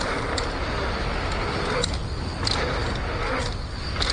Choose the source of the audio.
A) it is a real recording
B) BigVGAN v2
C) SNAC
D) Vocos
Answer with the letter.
A